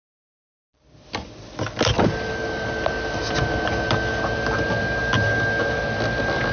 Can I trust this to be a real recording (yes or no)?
yes